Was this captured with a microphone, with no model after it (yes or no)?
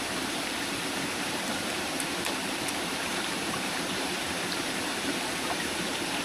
no